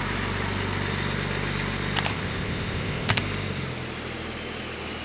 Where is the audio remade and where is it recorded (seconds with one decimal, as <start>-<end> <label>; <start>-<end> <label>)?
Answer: 0.0-2.1 recorded; 2.1-3.2 remade; 3.2-5.0 recorded